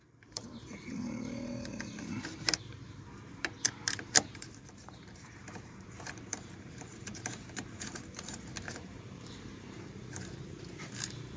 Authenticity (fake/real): fake